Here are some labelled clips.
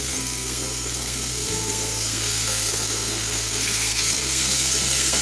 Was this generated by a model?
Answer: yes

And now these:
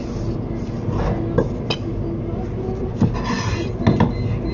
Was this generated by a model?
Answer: no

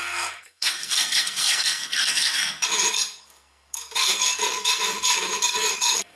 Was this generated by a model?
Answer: yes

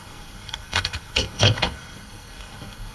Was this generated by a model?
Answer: yes